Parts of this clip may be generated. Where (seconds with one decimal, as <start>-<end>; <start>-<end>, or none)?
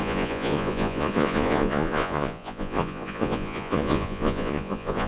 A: 0.0-5.1